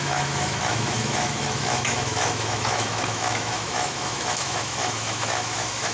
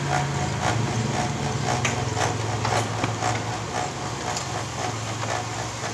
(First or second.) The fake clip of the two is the first